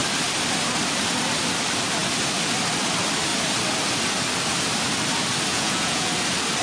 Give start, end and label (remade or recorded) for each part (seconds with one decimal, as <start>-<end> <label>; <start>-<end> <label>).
0.0-5.5 recorded; 5.5-6.1 remade; 6.1-6.6 recorded